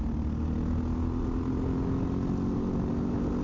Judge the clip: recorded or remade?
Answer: recorded